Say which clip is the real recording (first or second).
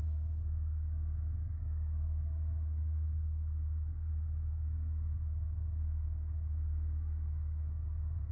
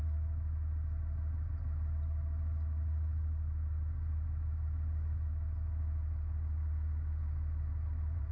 second